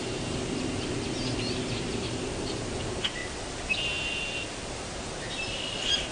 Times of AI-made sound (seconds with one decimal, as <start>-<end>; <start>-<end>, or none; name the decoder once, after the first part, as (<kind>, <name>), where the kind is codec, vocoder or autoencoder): none